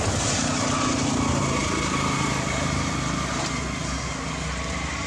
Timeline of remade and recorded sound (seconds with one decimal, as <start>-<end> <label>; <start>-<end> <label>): 0.0-5.1 recorded